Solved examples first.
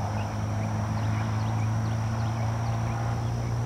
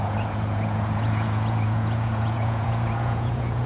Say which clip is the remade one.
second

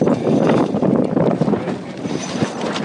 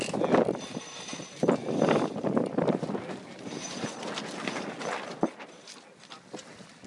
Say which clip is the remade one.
first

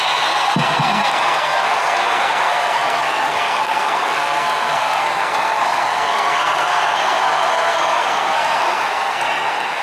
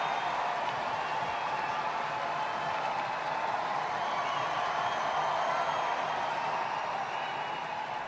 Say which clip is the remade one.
first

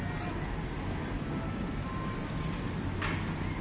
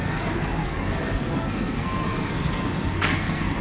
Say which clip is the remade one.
second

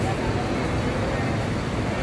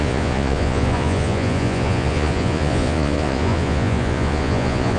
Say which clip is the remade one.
second